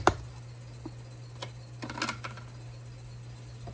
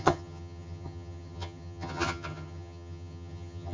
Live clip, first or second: first